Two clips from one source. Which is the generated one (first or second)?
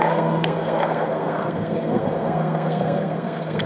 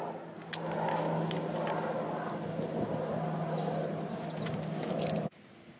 first